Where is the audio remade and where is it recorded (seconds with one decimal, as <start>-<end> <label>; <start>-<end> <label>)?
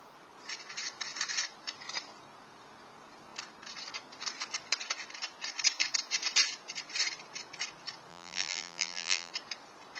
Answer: 0.0-8.1 recorded; 8.1-9.3 remade; 9.3-10.0 recorded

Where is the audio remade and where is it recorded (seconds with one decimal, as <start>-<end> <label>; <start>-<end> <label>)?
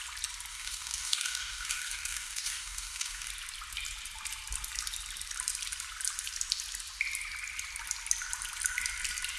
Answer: 0.0-0.5 recorded; 0.5-3.3 remade; 3.3-9.4 recorded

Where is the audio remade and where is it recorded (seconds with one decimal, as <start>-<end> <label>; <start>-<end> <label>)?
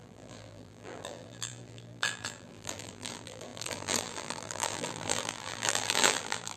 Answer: 0.0-6.6 remade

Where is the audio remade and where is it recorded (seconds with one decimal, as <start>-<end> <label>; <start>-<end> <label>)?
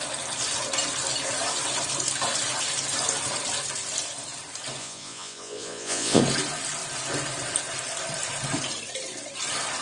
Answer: 0.0-4.8 recorded; 4.8-6.2 remade; 6.2-9.8 recorded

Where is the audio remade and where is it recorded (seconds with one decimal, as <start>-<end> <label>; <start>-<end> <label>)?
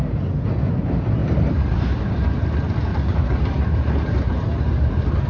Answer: 0.0-1.2 recorded; 1.2-2.1 remade; 2.1-2.9 recorded; 2.9-5.3 remade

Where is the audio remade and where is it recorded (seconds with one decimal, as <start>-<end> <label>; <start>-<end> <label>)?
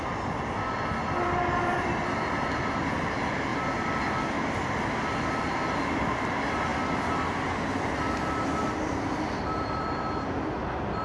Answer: 0.0-11.0 recorded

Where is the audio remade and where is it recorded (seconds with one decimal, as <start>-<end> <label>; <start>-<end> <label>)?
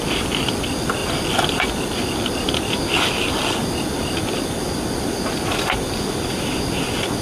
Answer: 0.0-7.2 recorded